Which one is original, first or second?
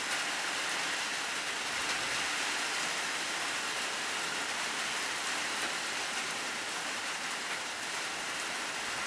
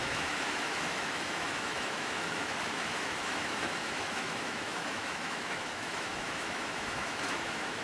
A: first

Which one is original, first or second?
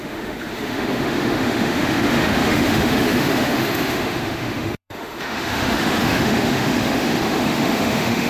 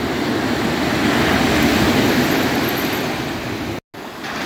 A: second